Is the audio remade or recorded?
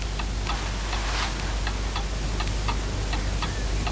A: recorded